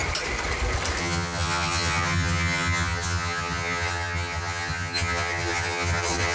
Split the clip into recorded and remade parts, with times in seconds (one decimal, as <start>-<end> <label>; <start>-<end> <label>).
0.0-1.0 recorded; 1.0-6.3 remade

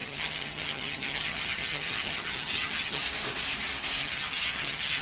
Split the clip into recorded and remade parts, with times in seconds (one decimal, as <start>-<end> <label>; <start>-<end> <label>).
0.0-3.0 remade; 3.0-4.0 recorded; 4.0-5.0 remade

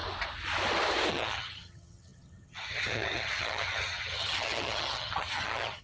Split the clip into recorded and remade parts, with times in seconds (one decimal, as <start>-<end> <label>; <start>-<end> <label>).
0.0-1.1 recorded; 1.1-5.8 remade